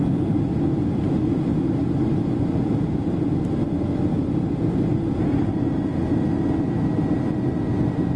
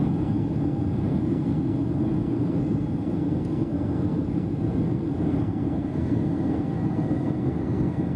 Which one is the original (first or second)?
first